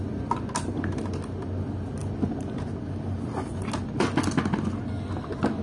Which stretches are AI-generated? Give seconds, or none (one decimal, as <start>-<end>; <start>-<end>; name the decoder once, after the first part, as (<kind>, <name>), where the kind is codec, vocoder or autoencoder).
none

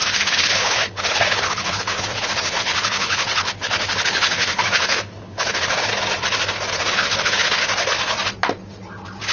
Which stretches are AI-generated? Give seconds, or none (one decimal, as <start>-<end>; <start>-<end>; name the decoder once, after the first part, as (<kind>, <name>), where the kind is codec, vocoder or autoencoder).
0.0-5.9 (codec, HILCodec); 6.7-7.6

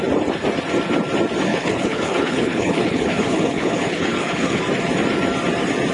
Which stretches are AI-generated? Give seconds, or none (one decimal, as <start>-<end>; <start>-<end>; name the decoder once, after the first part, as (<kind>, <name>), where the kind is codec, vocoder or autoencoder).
1.5-4.6 (codec, HILCodec)

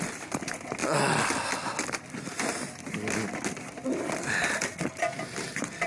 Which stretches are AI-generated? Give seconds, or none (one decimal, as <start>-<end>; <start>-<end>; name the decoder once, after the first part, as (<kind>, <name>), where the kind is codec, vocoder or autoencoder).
none

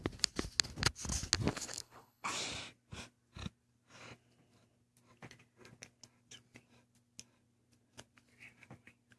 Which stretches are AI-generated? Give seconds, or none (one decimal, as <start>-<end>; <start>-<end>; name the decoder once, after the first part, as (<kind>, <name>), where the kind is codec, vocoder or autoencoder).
1.5-2.3 (codec, HILCodec)

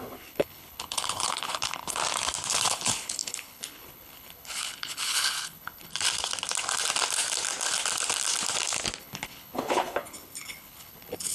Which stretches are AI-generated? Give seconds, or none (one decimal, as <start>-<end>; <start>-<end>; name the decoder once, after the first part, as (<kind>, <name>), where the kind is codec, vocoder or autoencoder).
0.0-2.0 (codec, HILCodec); 2.5-5.9; 9.0-11.3